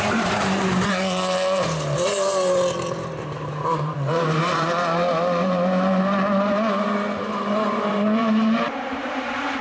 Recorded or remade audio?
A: remade